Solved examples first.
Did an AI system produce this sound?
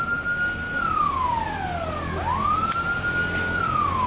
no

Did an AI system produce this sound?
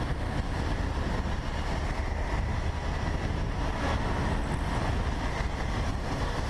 no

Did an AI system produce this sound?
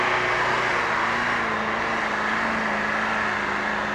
no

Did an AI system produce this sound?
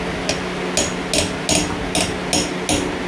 no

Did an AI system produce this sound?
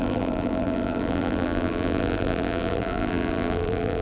yes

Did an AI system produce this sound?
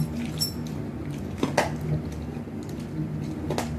no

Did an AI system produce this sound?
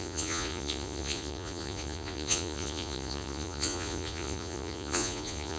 yes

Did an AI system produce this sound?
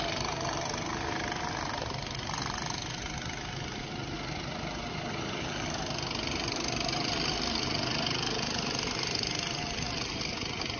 no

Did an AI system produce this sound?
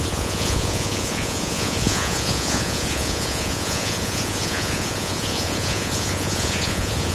yes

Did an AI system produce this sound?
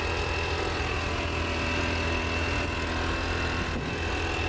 no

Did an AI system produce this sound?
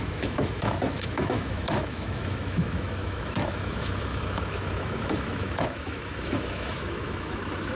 yes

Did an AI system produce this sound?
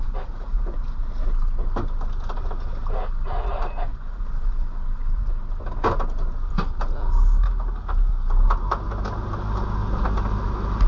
no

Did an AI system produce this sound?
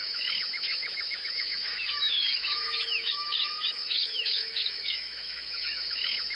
yes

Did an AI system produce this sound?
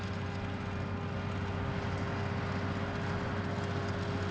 no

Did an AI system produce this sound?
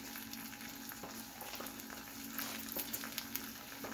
no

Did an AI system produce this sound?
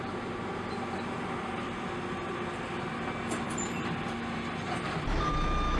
no